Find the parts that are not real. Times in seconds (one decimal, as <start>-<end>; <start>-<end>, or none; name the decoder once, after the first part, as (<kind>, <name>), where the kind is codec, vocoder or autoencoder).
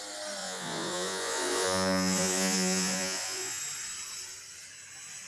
0.4-3.6 (vocoder, Vocos)